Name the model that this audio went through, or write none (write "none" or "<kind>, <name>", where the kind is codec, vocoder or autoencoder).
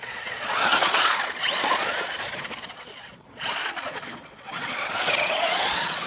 vocoder, Vocos